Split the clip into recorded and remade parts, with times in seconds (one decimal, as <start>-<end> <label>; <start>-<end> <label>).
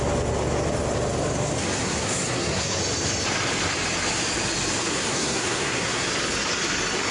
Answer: 0.0-1.8 recorded; 1.8-2.8 remade; 2.8-4.9 recorded; 4.9-6.1 remade; 6.1-7.1 recorded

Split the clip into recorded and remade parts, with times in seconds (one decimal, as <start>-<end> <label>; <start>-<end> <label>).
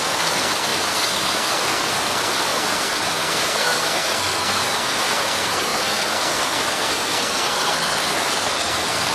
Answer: 0.0-9.1 remade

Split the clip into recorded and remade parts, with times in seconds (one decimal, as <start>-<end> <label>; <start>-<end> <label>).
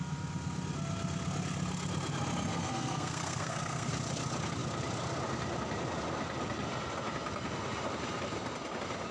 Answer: 0.0-2.5 recorded; 2.5-3.9 remade; 3.9-9.1 recorded